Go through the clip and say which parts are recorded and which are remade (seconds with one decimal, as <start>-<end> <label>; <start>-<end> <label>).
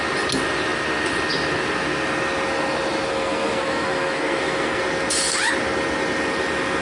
0.0-3.1 recorded; 3.1-4.8 remade; 4.8-6.8 recorded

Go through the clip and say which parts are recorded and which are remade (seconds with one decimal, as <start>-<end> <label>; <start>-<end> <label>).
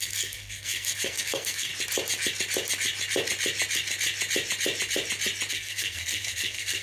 0.0-1.7 remade; 1.7-5.5 recorded; 5.5-6.8 remade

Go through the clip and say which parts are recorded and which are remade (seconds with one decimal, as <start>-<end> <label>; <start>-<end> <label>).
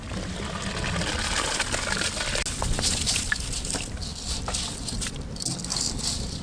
0.0-6.4 recorded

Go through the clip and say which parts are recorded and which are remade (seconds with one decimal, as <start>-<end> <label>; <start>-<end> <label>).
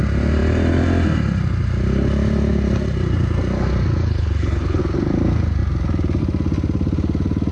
0.0-4.0 recorded; 4.0-4.8 remade; 4.8-7.5 recorded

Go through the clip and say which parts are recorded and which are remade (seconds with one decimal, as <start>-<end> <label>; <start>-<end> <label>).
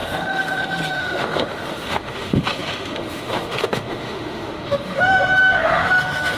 0.0-6.4 remade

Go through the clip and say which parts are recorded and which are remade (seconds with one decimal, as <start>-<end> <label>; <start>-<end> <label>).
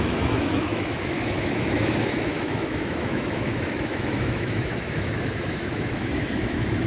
0.0-6.9 remade